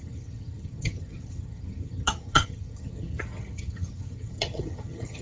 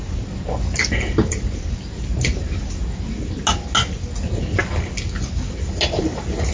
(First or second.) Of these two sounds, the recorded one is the second